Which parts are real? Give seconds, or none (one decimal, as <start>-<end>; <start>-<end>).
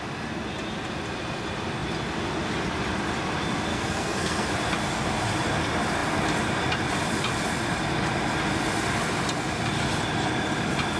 0.0-3.7; 4.5-11.0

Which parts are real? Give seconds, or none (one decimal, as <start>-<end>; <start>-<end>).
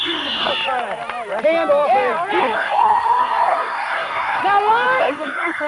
0.5-2.4; 4.4-5.0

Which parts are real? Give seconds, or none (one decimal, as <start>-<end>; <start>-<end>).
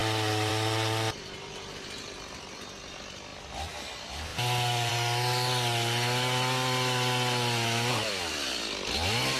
0.0-9.4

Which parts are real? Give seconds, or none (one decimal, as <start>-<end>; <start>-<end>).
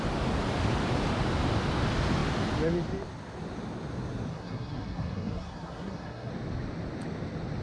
0.0-4.3; 6.3-7.6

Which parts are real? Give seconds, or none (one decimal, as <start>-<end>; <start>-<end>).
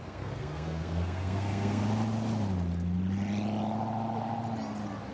1.8-5.1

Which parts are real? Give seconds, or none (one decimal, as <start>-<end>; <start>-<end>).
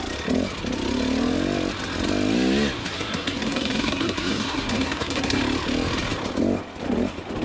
0.0-2.8; 5.4-7.4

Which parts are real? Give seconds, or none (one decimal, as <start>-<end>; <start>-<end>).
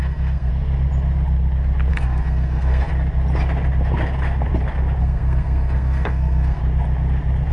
0.5-1.9; 2.9-5.0; 6.6-7.5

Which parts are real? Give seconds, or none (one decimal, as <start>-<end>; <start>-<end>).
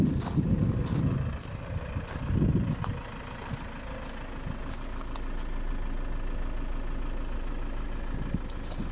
0.0-8.9